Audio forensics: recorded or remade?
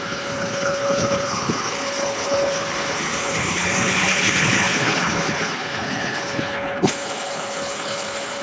remade